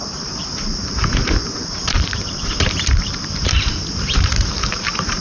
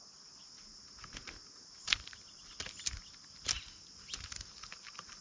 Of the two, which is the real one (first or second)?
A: second